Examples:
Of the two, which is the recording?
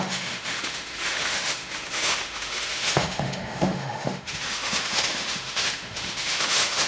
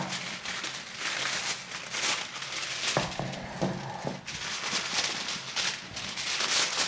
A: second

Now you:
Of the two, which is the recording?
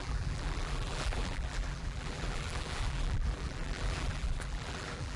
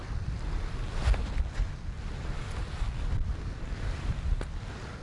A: second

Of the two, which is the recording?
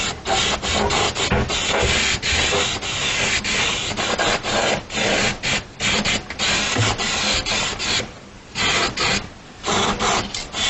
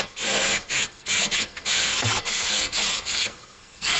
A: first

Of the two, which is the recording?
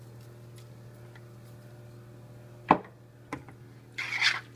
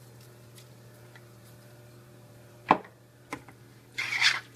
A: first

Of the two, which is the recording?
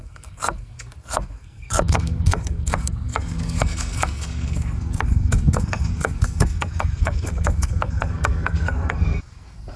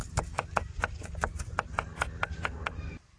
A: second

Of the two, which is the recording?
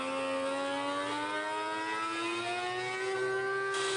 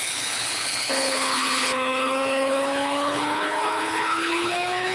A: first